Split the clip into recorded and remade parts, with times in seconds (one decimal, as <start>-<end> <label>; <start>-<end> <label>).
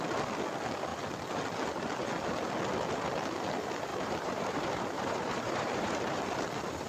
0.0-3.9 recorded; 3.9-6.2 remade; 6.2-6.9 recorded